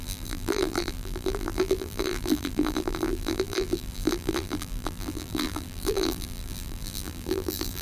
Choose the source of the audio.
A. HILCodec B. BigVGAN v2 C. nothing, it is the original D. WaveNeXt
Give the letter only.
B